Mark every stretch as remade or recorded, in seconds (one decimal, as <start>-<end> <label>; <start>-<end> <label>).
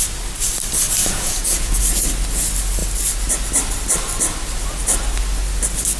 0.0-1.0 recorded; 1.0-1.8 remade; 1.8-6.0 recorded